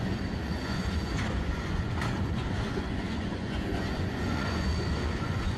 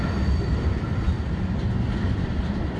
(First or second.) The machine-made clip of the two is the first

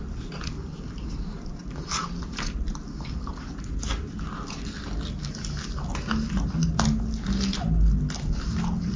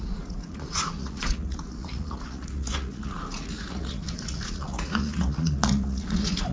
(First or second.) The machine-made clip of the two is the second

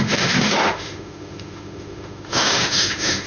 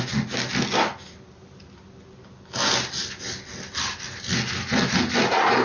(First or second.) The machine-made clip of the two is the first